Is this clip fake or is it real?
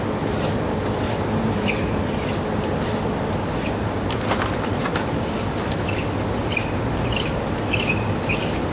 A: real